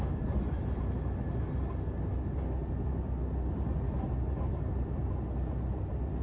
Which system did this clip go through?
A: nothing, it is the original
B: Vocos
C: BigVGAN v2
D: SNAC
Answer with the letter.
A